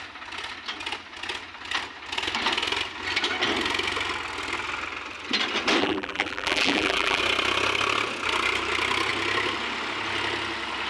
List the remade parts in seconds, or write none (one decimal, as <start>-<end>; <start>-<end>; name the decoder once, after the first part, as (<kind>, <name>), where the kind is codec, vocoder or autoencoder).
5.8-7.2 (vocoder, BigVGAN v2)